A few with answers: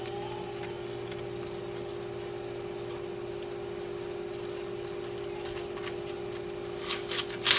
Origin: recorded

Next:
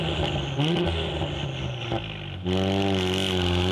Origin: recorded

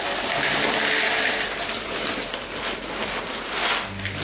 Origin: recorded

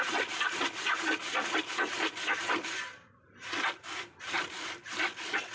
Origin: recorded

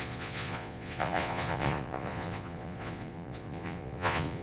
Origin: remade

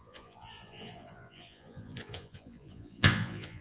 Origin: remade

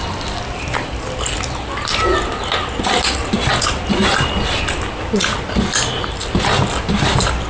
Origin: recorded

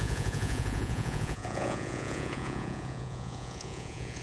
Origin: remade